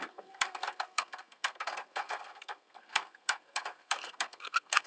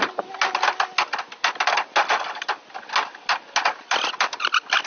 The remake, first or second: first